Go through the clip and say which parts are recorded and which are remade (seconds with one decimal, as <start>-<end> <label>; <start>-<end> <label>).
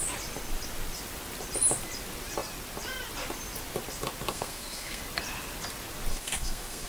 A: 0.0-4.3 recorded; 4.3-5.0 remade; 5.0-6.1 recorded; 6.1-6.9 remade